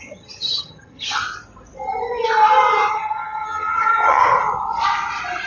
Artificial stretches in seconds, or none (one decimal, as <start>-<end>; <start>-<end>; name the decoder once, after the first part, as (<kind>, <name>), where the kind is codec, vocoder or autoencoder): 0.0-1.2 (vocoder, HiFi-GAN); 2.9-4.2